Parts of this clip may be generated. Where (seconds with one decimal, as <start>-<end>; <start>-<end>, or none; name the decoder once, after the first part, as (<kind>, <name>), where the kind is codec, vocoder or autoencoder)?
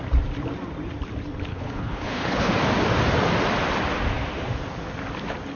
1.5-2.5 (codec, HILCodec)